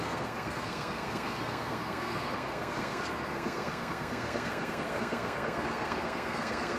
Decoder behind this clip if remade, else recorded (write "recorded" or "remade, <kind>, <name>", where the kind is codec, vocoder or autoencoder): remade, codec, SNAC